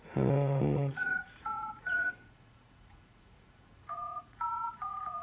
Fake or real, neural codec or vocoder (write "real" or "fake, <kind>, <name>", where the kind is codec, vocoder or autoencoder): fake, vocoder, Vocos